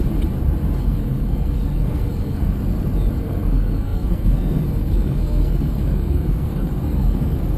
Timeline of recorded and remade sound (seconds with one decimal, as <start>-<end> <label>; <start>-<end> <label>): 0.0-0.8 recorded; 0.8-2.6 remade; 2.6-3.2 recorded; 3.2-7.6 remade